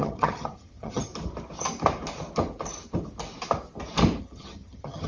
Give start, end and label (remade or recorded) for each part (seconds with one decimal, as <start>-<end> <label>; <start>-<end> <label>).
0.0-1.1 remade; 1.1-4.2 recorded; 4.2-5.1 remade